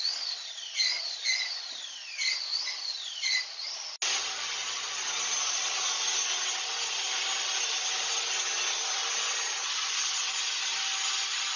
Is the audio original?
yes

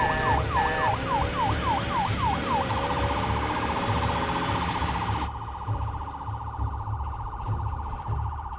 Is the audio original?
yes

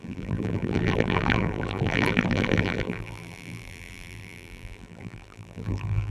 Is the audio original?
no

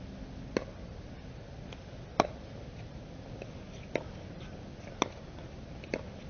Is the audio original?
yes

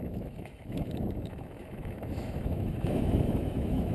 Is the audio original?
no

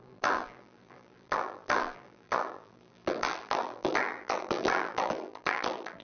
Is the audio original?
no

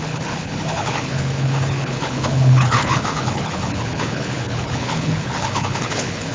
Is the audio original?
no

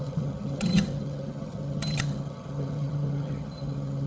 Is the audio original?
no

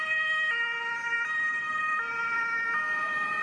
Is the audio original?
yes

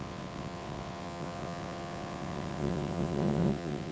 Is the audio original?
no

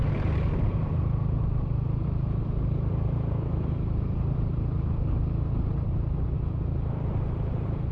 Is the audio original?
no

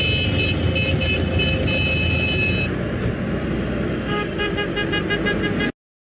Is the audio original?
yes